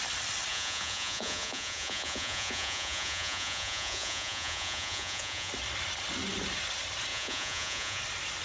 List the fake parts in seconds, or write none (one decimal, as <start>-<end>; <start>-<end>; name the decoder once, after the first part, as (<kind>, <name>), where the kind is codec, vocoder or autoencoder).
0.5-5.5 (vocoder, Vocos); 7.1-8.0